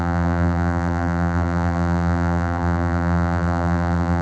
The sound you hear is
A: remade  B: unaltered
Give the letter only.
A